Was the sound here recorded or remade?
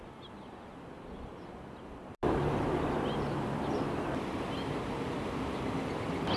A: recorded